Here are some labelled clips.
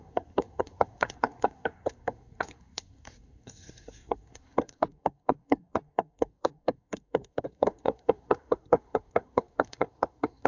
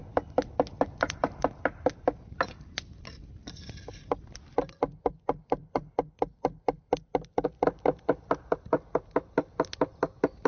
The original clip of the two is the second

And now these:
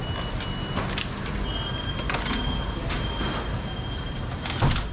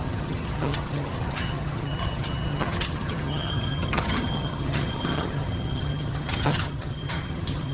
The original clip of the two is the first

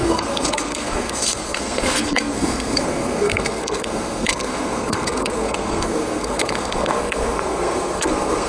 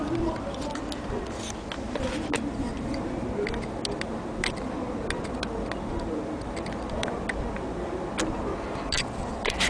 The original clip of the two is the second